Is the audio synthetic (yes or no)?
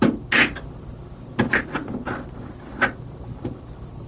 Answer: no